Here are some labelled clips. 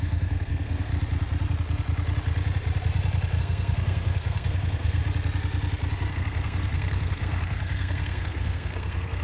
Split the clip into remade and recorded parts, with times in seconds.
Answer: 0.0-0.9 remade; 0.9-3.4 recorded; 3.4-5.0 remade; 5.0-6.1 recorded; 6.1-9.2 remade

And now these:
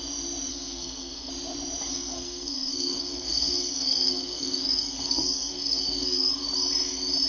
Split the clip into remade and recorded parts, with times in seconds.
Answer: 0.0-0.5 recorded; 0.5-1.3 remade; 1.3-1.9 recorded; 1.9-6.3 remade; 6.3-7.3 recorded

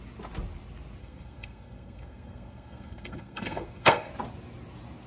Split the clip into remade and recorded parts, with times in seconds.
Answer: 0.0-1.0 recorded; 1.0-4.1 remade; 4.1-5.1 recorded

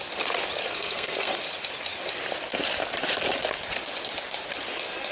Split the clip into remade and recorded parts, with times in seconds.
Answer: 0.0-0.7 recorded; 0.7-1.3 remade; 1.3-5.1 recorded

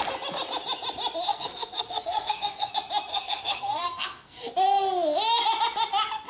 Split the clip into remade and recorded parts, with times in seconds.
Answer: 0.0-1.3 recorded; 1.3-2.7 remade; 2.7-3.1 recorded; 3.1-4.4 remade; 4.4-6.3 recorded